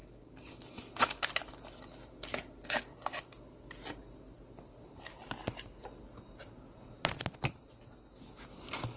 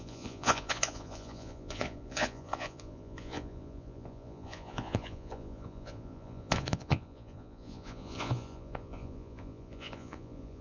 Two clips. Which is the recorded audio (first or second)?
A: first